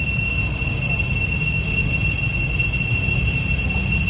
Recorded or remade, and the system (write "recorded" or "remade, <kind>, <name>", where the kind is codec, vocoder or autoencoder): recorded